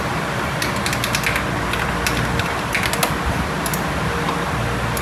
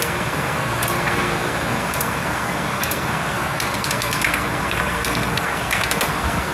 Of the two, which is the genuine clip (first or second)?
first